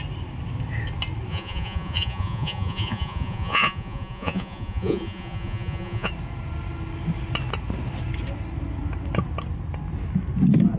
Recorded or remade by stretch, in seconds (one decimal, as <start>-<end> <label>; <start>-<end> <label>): 0.0-1.3 recorded; 1.3-6.1 remade; 6.1-10.8 recorded